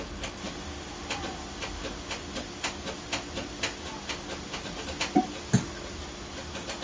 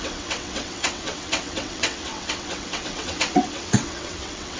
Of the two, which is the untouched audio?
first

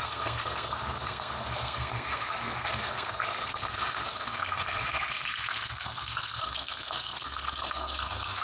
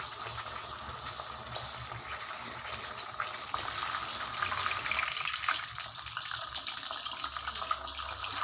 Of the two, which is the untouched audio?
second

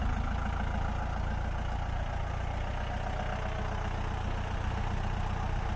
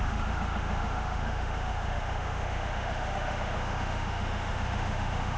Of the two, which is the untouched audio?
first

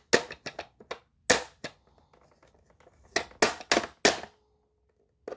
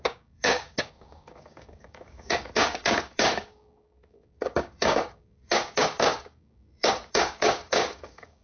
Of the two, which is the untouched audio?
first